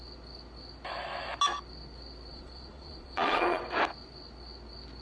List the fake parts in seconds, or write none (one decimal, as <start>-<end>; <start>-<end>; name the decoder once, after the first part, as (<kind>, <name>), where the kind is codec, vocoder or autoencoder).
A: 2.3-3.6 (vocoder, Vocos)

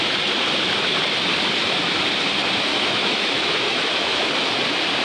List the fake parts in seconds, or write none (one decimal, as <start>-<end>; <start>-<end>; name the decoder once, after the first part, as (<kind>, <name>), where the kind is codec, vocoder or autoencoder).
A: 2.7-4.3 (autoencoder, DAC-VAE)

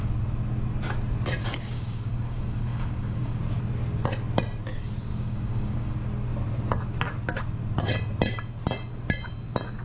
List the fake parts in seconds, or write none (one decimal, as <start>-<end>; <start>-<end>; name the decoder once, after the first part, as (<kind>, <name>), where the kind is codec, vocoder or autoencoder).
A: 1.4-3.4 (codec, DAC); 5.1-5.9

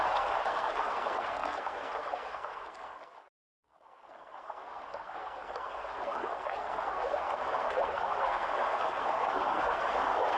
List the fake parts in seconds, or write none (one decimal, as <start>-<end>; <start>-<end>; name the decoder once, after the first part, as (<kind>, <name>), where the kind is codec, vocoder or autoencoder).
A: 0.0-10.4 (codec, SNAC)

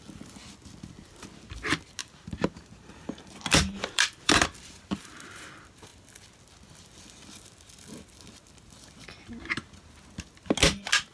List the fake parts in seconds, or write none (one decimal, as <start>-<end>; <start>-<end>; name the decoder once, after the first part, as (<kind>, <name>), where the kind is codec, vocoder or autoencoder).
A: 2.0-5.5 (vocoder, BigVGAN v2)

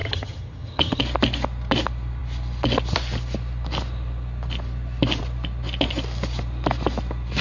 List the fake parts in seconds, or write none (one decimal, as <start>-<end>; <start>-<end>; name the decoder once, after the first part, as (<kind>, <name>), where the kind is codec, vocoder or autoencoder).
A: 0.0-1.0 (vocoder, HiFi-GAN)

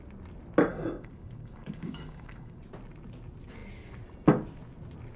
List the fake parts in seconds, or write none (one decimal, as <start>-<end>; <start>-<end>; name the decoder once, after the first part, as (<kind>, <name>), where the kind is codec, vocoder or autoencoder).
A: 0.7-2.6 (codec, DAC)